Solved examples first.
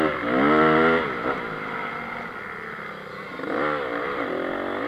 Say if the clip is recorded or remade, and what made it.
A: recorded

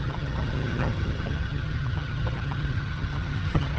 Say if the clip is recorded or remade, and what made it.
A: remade, vocoder, HiFi-GAN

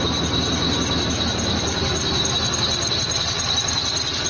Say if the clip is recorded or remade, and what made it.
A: recorded